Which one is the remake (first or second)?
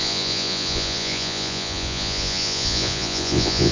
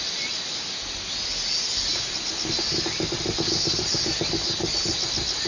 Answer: first